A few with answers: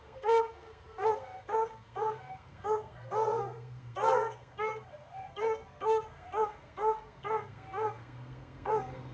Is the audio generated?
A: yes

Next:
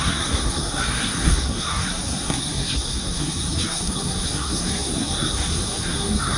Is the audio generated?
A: yes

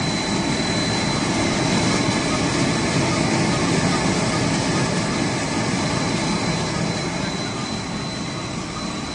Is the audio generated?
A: no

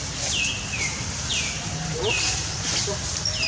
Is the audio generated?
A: no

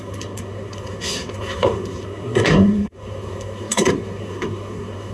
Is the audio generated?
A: yes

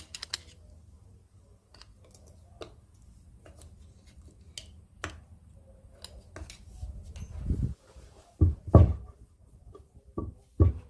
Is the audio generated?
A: no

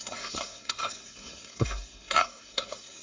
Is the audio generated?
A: yes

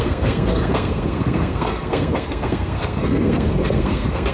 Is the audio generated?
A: yes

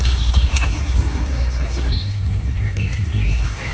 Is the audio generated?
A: yes